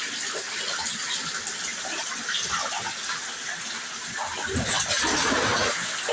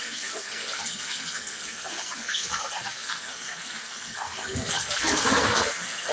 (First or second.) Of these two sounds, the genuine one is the first